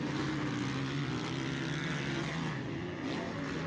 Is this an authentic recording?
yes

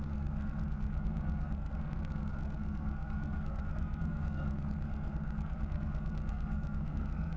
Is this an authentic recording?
no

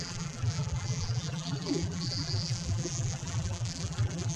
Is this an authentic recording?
no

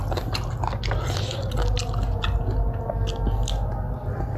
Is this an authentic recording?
yes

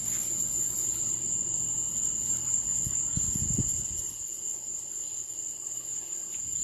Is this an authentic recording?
yes